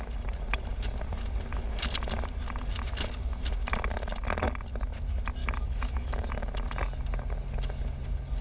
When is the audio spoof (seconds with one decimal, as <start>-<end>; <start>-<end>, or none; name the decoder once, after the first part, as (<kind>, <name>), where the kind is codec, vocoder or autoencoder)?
5.4-6.3 (autoencoder, DAC-VAE)

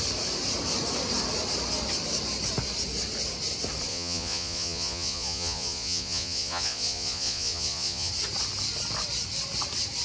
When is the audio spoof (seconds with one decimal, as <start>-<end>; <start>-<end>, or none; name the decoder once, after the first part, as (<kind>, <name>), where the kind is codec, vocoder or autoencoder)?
3.9-8.1 (vocoder, Vocos)

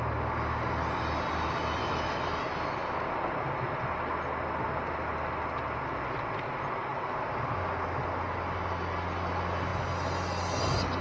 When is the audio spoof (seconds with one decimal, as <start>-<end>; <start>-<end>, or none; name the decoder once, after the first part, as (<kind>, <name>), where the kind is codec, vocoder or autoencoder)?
1.8-2.4 (autoencoder, DAC-VAE)

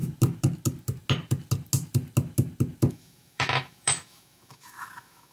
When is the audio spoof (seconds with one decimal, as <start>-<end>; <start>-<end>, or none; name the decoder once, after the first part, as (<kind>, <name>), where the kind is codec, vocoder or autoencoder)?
2.9-5.3 (autoencoder, DAC-VAE)

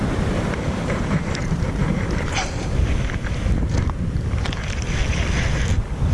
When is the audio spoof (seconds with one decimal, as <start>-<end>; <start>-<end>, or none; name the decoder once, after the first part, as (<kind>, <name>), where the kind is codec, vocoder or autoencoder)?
0.0-3.4 (vocoder, BigVGAN v2)